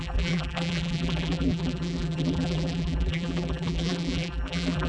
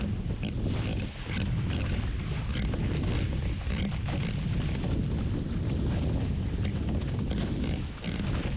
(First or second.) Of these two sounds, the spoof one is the first